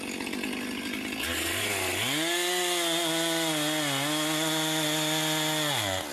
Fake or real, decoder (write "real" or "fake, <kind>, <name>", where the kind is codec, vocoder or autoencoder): real